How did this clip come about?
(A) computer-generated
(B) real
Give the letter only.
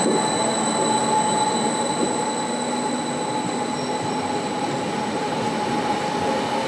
B